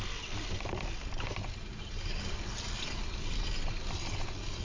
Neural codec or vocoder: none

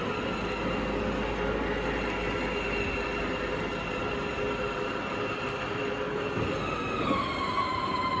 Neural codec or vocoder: none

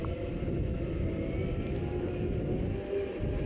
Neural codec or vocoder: none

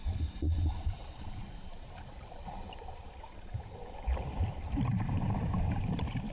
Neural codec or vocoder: vocoder, BigVGAN v2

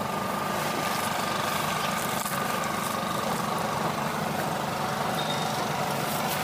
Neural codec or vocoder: none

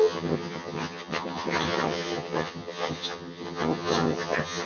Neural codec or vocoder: vocoder, HiFi-GAN